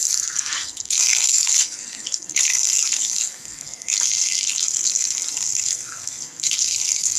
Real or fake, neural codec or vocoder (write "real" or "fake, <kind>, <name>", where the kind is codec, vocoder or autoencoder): fake, codec, SNAC